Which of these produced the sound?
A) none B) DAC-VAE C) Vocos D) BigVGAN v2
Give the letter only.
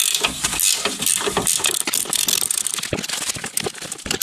A